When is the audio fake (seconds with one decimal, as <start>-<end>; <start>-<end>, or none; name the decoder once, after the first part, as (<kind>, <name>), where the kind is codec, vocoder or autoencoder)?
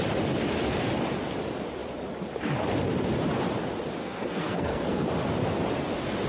4.0-5.1 (codec, SNAC)